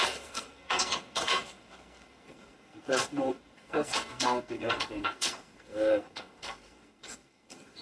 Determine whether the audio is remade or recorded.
remade